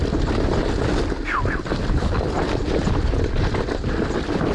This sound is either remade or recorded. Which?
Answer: recorded